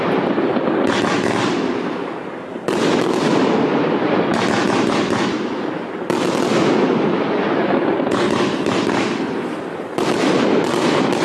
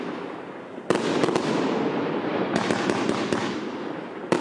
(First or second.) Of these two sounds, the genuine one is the second